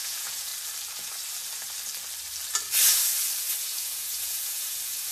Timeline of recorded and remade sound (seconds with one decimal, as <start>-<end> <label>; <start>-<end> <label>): 0.0-0.5 remade; 0.5-3.6 recorded; 3.6-5.1 remade